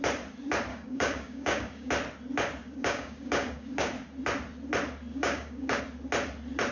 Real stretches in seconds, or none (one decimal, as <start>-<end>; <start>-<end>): 0.0-0.7; 1.9-2.6; 3.9-5.1; 5.8-6.7